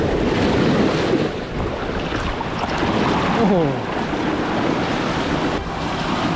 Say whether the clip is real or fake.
real